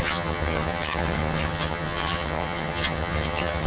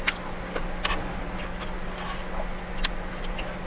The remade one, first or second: first